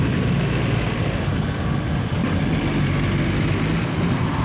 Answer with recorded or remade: recorded